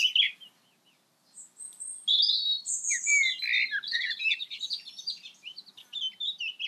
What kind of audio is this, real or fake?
real